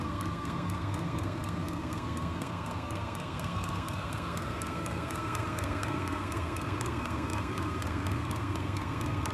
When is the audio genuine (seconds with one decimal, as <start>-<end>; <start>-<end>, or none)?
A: none